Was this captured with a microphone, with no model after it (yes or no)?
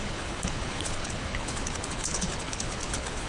no